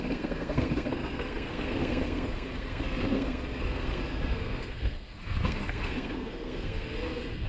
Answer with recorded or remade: remade